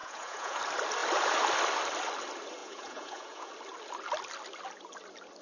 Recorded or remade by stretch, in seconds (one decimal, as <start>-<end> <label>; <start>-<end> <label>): 0.0-0.6 remade; 0.6-2.6 recorded; 2.6-3.5 remade; 3.5-5.4 recorded

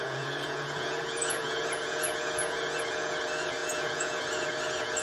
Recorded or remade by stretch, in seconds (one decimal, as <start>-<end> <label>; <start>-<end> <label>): 0.0-5.0 remade